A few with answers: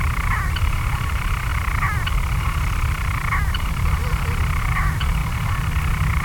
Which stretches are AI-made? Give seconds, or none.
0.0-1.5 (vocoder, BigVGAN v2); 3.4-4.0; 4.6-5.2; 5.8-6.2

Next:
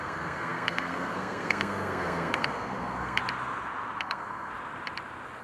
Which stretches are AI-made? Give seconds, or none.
0.0-3.2 (codec, SNAC); 4.0-4.5

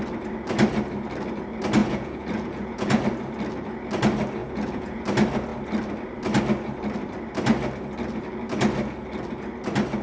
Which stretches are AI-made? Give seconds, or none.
1.8-3.0 (vocoder, Vocos); 4.4-5.0

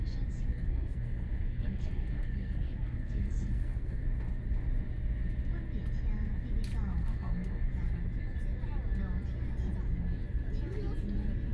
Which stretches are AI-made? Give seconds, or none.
0.5-4.0 (codec, SNAC); 7.0-7.7

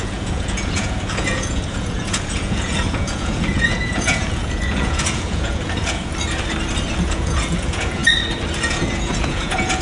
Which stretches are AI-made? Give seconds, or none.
0.0-6.1 (vocoder, Vocos); 7.0-8.0; 8.5-9.8

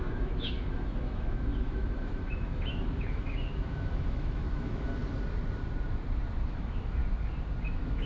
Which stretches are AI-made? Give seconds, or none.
0.0-5.0 (autoencoder, DAC-VAE); 6.5-7.0; 7.6-8.1

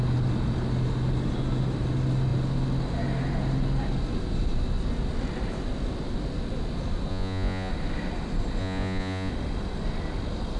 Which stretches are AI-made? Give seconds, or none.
7.1-7.7 (vocoder, Vocos); 8.6-9.3

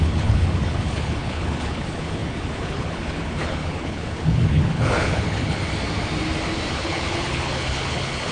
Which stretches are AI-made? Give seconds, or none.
0.0-5.6 (codec, HILCodec); 6.7-8.3